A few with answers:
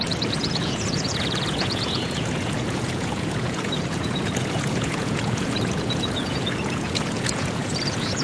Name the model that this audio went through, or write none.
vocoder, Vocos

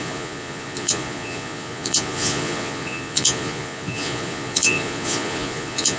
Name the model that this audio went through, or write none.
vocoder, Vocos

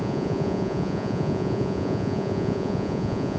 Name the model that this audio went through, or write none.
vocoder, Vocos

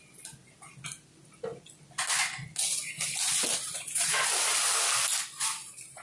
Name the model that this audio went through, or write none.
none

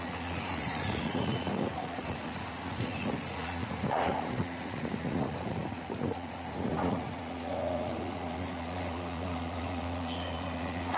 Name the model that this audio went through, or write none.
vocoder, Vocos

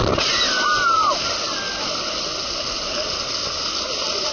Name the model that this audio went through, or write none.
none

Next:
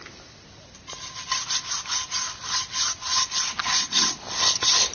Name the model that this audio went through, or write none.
none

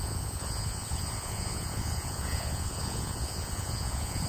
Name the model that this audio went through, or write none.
vocoder, Vocos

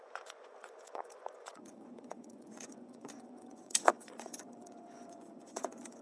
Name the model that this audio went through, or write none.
vocoder, Vocos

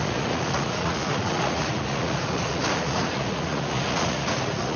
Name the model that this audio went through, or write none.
vocoder, Vocos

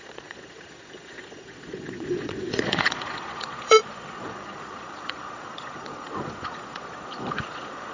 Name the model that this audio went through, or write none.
vocoder, Vocos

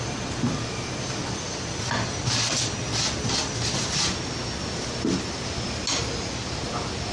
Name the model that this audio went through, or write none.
none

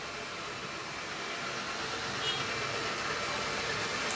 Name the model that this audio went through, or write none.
none